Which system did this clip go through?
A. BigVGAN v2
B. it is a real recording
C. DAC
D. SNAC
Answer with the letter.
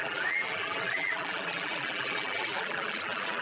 A